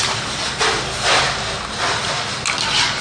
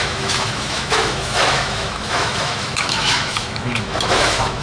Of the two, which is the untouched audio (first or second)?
first